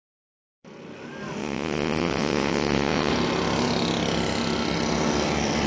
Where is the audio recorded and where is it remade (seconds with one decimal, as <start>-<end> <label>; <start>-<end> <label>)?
0.0-1.4 recorded; 1.4-3.1 remade; 3.1-5.7 recorded